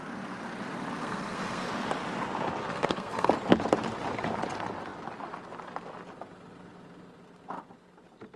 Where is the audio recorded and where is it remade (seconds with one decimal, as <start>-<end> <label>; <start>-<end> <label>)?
0.0-1.0 recorded; 1.0-1.7 remade; 1.7-2.6 recorded; 2.6-3.3 remade; 3.3-8.4 recorded